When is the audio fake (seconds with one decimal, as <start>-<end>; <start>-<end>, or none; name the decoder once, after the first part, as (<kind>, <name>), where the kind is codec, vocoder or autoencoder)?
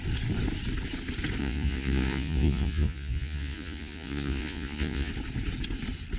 1.4-5.1 (vocoder, Vocos)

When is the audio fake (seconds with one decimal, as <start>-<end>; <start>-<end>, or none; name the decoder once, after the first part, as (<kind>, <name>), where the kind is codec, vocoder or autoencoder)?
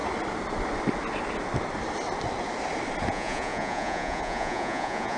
3.1-5.2 (vocoder, Vocos)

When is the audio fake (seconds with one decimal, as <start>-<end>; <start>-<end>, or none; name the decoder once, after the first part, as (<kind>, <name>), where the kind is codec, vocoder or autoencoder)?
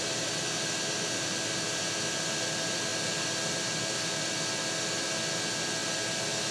none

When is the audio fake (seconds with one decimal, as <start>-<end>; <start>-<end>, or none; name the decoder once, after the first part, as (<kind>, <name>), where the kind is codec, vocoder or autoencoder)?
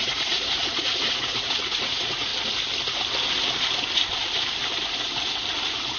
0.0-2.3 (vocoder, Vocos)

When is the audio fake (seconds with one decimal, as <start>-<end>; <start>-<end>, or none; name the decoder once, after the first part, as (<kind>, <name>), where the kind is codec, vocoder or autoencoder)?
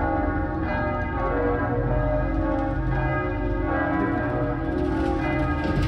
none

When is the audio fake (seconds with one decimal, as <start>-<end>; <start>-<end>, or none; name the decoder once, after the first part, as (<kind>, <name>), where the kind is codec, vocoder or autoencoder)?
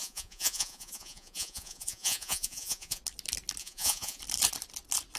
0.0-3.0 (vocoder, Vocos); 3.6-4.2